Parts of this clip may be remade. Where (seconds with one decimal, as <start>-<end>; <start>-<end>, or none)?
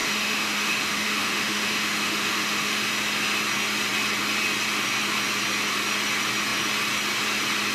0.0-2.8